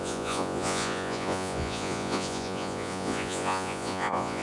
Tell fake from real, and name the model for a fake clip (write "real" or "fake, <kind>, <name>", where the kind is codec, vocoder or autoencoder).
fake, vocoder, Vocos